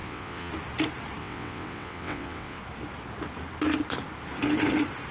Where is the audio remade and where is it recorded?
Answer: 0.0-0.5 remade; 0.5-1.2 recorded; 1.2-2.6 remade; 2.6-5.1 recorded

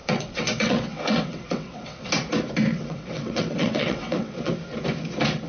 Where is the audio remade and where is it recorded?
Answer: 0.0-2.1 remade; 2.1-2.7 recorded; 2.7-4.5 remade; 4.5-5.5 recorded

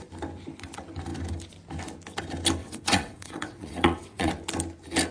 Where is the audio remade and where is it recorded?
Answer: 0.0-2.6 recorded; 2.6-4.3 remade; 4.3-5.1 recorded

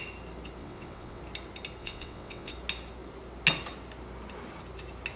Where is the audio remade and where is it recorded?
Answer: 0.0-0.6 recorded; 0.6-1.2 remade; 1.2-1.8 recorded; 1.8-2.5 remade; 2.5-5.2 recorded

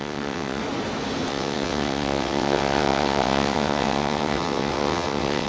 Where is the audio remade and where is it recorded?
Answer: 0.0-0.6 remade; 0.6-1.3 recorded; 1.3-5.5 remade

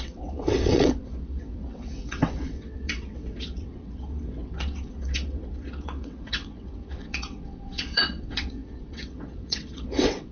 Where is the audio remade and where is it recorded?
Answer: 0.0-10.3 remade